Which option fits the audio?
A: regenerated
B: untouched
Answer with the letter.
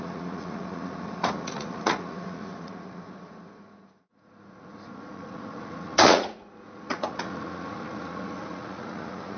A